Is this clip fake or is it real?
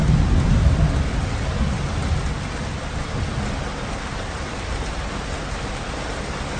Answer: real